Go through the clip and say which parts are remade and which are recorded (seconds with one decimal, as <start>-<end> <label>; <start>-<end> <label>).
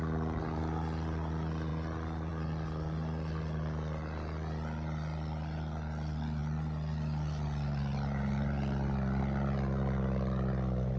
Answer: 0.0-11.0 recorded